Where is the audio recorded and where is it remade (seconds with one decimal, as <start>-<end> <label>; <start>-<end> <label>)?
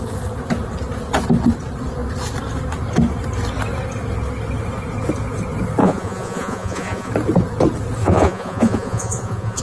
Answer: 0.0-5.8 recorded; 5.8-7.1 remade; 7.1-8.0 recorded; 8.0-9.6 remade